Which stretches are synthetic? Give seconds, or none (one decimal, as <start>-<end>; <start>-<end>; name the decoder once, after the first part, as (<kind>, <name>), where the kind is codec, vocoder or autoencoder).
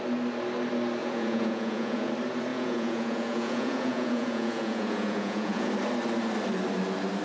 1.0-2.1 (vocoder, Vocos); 2.5-5.7